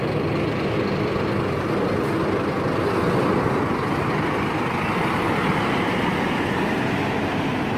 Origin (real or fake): real